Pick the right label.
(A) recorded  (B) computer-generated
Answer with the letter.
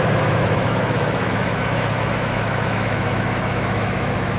B